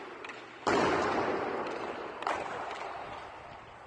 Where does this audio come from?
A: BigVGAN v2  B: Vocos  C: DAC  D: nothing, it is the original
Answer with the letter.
A